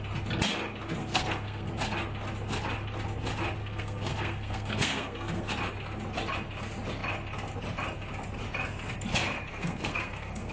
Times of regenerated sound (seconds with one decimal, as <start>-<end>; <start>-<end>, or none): 1.0-1.7; 3.6-5.5; 9.5-10.5